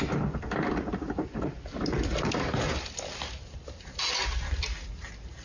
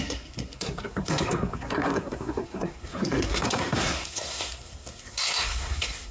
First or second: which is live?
first